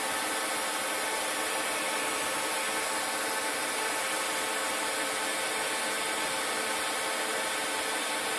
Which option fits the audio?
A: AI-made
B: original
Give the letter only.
B